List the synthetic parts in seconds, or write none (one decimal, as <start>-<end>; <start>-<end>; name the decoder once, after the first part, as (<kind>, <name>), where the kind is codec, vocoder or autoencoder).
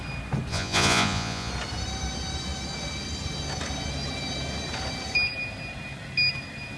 0.5-1.5 (vocoder, Vocos)